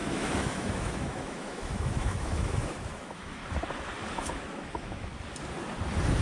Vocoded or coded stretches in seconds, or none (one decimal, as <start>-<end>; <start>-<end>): 0.0-3.4; 4.1-5.1